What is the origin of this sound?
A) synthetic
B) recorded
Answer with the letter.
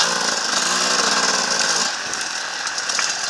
B